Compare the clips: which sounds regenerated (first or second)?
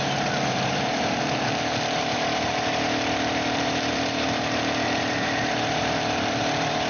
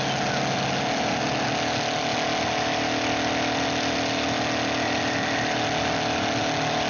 first